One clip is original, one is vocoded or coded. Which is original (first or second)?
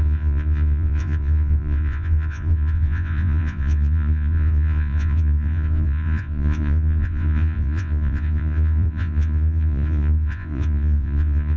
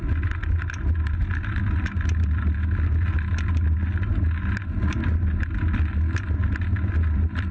second